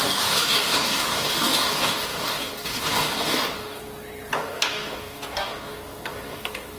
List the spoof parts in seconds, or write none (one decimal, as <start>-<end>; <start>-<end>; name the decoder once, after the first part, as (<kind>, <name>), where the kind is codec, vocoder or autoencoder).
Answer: 0.0-3.8 (codec, DAC); 4.3-6.8